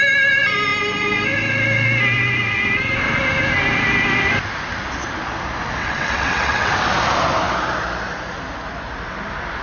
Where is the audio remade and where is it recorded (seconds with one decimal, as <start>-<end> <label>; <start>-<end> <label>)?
0.0-5.8 recorded; 5.8-6.7 remade; 6.7-9.6 recorded